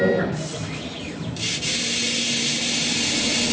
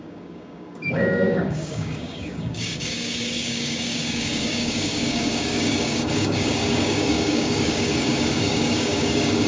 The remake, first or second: second